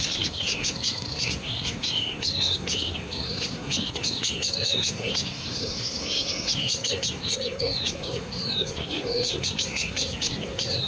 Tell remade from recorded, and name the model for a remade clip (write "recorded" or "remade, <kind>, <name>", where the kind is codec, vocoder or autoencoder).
remade, codec, SNAC